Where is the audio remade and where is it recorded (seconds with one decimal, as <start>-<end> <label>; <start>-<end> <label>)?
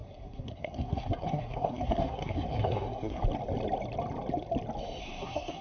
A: 0.0-3.2 remade; 3.2-5.0 recorded; 5.0-5.6 remade